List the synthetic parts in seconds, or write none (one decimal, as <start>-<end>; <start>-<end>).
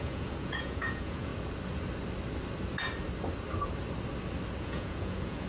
0.0-1.3; 4.6-5.5